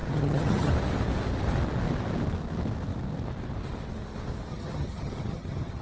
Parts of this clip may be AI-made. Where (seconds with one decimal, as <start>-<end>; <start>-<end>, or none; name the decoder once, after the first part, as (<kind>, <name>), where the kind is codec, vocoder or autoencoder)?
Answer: 0.0-0.7 (vocoder, HiFi-GAN); 4.5-5.8